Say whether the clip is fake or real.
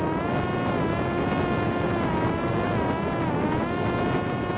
real